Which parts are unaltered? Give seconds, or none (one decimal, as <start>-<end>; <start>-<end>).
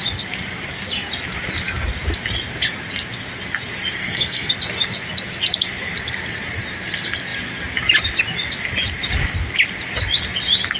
0.0-4.0; 4.5-10.8